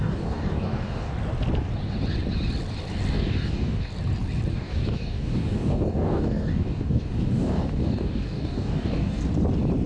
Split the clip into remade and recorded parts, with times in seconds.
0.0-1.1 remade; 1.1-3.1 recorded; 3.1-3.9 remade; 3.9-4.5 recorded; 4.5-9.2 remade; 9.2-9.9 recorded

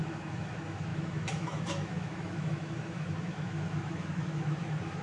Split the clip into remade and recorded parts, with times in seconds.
0.0-5.0 remade

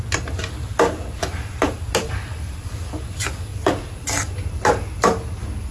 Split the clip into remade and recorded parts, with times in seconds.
0.0-1.2 recorded; 1.2-1.9 remade; 1.9-3.5 recorded; 3.5-4.0 remade; 4.0-5.7 recorded

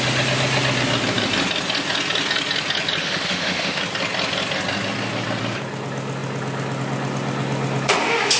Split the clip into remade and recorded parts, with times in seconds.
0.0-3.0 recorded; 3.0-3.8 remade; 3.8-8.4 recorded

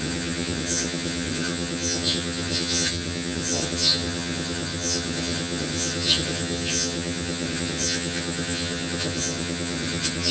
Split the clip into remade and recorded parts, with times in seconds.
0.0-10.3 remade

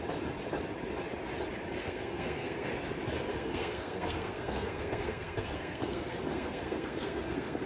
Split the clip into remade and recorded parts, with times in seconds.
0.0-1.8 recorded; 1.8-2.7 remade; 2.7-3.3 recorded; 3.3-7.7 remade

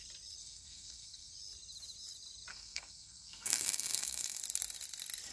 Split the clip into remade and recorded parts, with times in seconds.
0.0-0.4 recorded; 0.4-1.3 remade; 1.3-2.5 recorded; 2.5-4.4 remade; 4.4-5.3 recorded

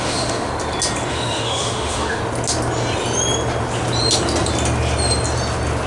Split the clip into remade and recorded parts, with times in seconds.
0.0-0.5 remade; 0.5-1.1 recorded; 1.1-2.2 remade; 2.2-5.9 recorded